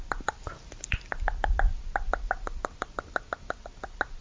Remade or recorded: recorded